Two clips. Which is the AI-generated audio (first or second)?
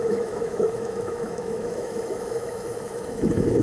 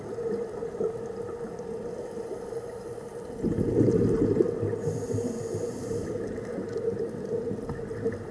first